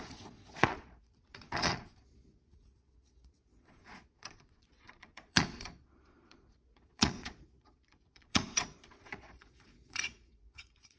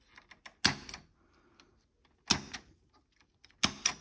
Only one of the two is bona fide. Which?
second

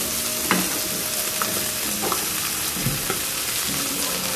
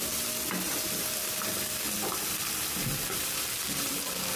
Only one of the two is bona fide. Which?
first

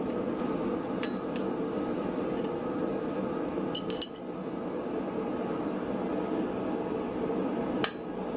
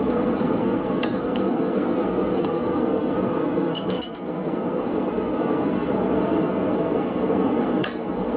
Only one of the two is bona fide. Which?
first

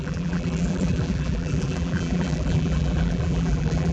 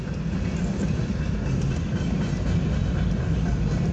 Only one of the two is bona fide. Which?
second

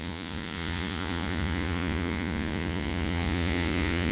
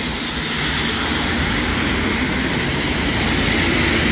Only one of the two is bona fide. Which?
second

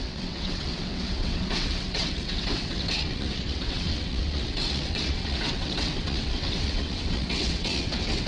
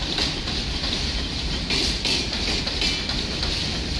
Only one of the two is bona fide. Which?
second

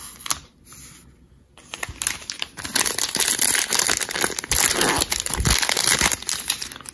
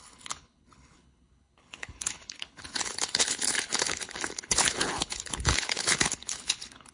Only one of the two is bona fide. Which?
first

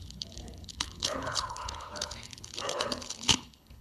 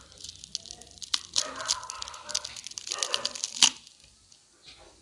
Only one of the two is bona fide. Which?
second